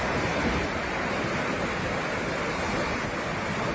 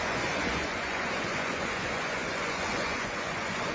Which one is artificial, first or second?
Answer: second